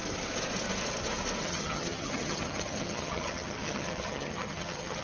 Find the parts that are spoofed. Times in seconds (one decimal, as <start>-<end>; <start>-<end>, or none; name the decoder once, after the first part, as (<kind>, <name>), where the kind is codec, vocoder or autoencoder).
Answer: 1.4-5.0 (vocoder, HiFi-GAN)